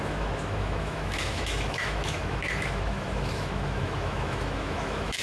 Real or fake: fake